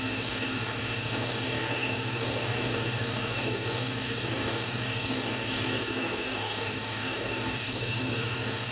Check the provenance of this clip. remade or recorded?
remade